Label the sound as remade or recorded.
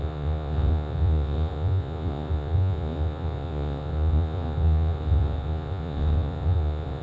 remade